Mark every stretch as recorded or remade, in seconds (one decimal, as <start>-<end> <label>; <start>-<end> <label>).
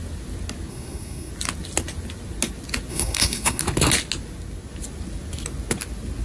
0.0-0.7 recorded; 0.7-1.3 remade; 1.3-2.9 recorded; 2.9-3.6 remade; 3.6-6.2 recorded